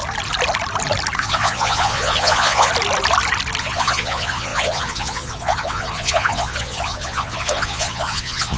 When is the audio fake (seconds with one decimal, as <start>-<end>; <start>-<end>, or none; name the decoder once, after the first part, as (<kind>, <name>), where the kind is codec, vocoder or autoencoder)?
1.2-2.7 (vocoder, Vocos); 3.6-8.6